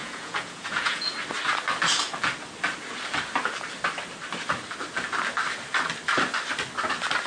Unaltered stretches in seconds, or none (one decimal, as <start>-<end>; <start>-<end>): 1.1-7.3